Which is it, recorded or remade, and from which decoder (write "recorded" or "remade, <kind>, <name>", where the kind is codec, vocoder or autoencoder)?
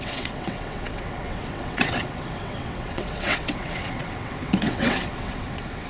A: remade, vocoder, WaveNeXt